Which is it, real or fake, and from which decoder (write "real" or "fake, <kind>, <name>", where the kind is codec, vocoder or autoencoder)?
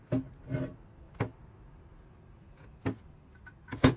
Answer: real